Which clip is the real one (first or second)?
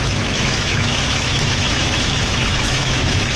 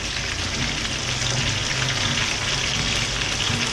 second